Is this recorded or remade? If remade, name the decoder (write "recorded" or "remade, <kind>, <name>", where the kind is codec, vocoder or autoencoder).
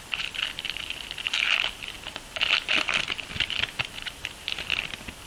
remade, vocoder, BigVGAN v2